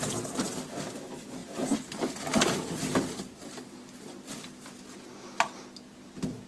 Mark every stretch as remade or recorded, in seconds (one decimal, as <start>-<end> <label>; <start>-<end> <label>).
0.0-6.5 recorded